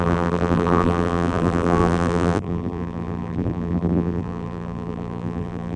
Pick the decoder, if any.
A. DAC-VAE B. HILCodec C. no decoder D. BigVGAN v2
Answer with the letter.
D